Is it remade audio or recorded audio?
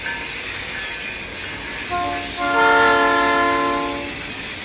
recorded